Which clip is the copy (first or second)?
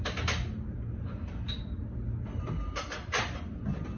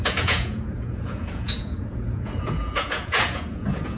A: second